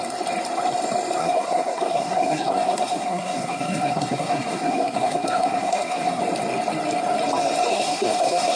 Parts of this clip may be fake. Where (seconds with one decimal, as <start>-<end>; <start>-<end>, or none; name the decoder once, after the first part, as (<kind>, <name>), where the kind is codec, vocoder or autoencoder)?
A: 1.2-6.2 (codec, SNAC); 7.7-8.6